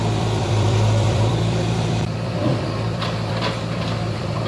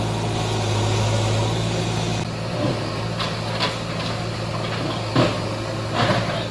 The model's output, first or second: first